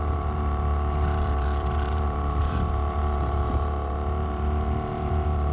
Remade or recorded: remade